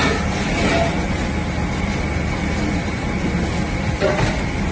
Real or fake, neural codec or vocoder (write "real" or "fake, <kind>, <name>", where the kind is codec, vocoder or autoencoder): real